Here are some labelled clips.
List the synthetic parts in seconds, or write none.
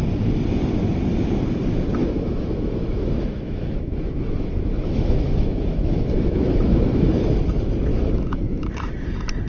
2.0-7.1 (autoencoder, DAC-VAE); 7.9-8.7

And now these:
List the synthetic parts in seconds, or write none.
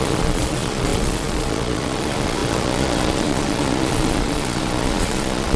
0.0-5.6 (vocoder, Vocos)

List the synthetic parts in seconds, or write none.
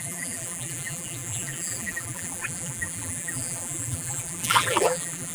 0.0-5.3 (vocoder, BigVGAN v2)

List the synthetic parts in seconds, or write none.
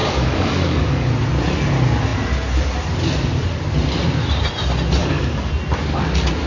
0.0-1.1 (codec, DAC); 5.0-5.5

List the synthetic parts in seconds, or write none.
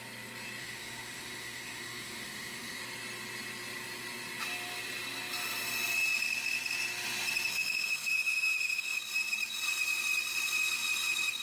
0.6-2.8 (autoencoder, DAC-VAE); 7.5-9.0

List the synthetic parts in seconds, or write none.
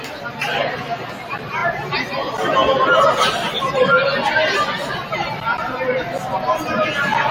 none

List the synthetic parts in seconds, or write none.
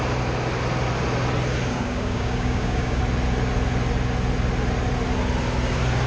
1.7-3.0 (codec, DAC)